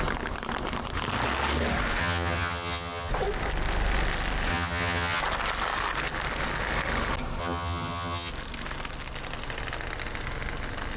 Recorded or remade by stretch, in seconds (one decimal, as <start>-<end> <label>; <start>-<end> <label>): 0.0-2.0 recorded; 2.0-3.1 remade; 3.1-4.5 recorded; 4.5-5.2 remade; 5.2-7.4 recorded; 7.4-8.3 remade; 8.3-11.0 recorded